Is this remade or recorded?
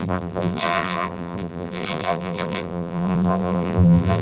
remade